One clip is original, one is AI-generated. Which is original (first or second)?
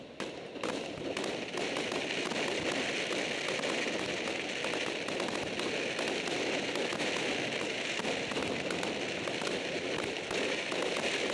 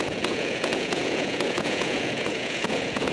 first